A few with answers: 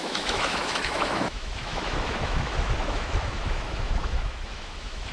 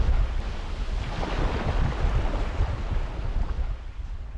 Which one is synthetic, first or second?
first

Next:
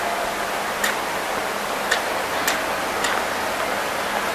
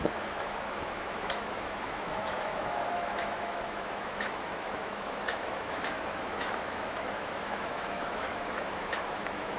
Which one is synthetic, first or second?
second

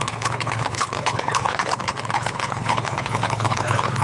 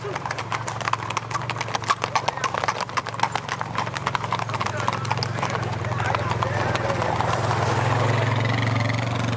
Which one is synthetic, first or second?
first